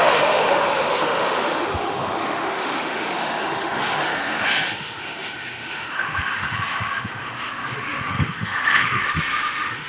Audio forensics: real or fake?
fake